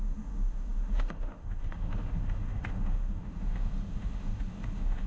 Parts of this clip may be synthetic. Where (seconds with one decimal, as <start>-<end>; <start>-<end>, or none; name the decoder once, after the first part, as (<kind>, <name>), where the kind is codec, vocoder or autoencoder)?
0.0-5.1 (autoencoder, DAC-VAE)